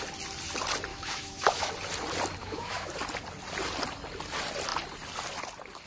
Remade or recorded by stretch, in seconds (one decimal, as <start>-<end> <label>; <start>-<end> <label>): 0.0-0.9 recorded; 0.9-1.7 remade; 1.7-2.4 recorded; 2.4-2.9 remade; 2.9-5.9 recorded